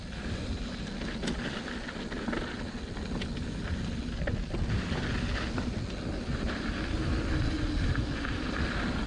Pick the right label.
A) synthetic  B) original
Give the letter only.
B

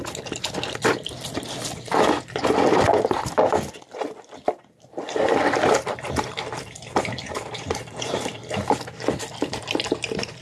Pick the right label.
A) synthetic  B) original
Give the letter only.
A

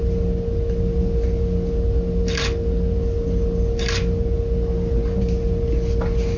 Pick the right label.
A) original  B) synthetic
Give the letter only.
A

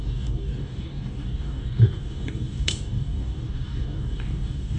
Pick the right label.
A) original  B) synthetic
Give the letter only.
B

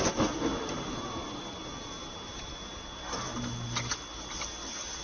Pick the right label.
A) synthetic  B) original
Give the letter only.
B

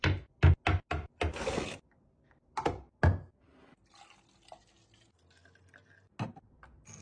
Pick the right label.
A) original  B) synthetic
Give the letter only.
A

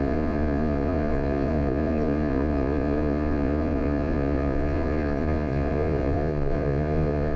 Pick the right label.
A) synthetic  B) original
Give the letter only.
A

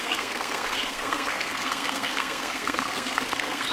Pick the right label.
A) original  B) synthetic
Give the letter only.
B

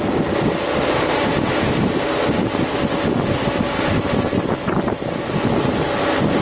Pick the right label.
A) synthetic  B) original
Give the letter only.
B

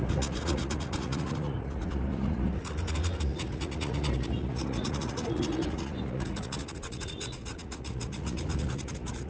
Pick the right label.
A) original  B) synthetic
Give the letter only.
B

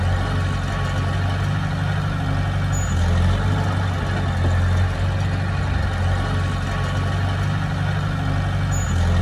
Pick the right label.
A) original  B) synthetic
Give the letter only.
A